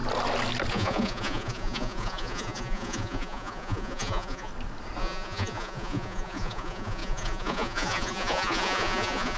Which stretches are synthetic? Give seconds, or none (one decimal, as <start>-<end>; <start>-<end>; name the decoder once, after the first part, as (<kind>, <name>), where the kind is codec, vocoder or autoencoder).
0.7-4.5 (vocoder, Vocos); 5.0-9.4